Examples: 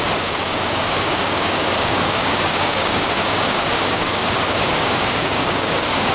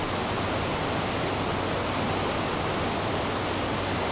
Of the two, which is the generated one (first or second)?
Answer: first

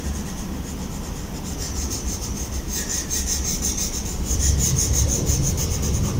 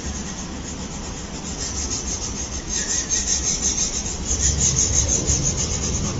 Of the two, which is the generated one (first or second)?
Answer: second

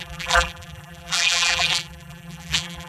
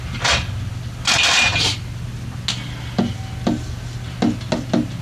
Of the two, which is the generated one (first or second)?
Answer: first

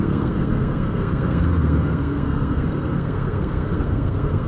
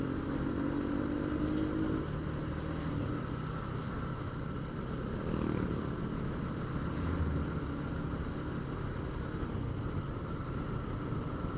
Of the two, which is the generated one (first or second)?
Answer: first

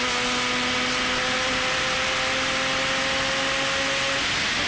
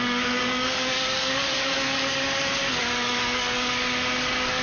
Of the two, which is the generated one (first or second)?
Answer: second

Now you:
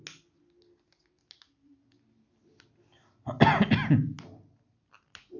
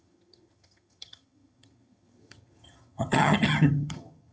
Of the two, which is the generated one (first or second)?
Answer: second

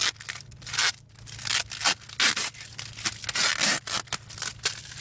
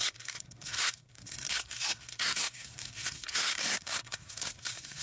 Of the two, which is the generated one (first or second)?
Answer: second